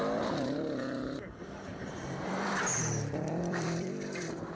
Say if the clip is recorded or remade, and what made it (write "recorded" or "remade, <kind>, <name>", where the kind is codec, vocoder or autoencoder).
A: remade, vocoder, BigVGAN v2